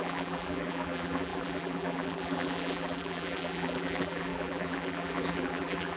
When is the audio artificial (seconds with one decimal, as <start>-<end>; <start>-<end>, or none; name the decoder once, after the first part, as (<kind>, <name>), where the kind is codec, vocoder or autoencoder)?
0.0-6.0 (vocoder, BigVGAN v2)